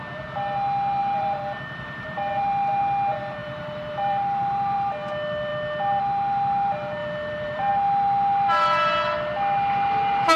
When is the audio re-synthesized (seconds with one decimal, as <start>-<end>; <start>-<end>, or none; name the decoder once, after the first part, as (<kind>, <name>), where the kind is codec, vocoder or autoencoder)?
1.0-2.8 (vocoder, BigVGAN v2); 3.4-4.9; 7.0-7.7